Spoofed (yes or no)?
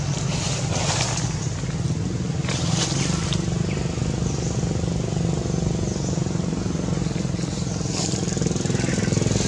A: no